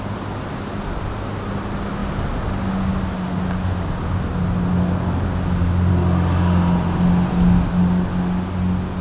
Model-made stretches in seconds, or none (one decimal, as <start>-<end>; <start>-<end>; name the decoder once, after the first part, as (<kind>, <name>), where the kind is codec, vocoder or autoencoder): none